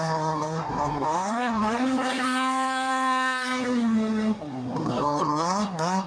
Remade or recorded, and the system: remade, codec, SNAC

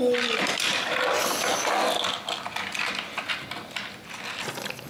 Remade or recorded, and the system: recorded